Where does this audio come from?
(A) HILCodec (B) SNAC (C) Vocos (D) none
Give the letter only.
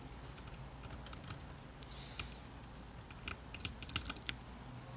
D